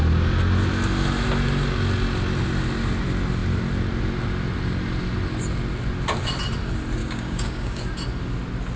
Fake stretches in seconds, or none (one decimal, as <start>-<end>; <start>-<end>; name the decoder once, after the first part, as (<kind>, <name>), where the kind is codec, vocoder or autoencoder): 7.0-7.8 (codec, DAC)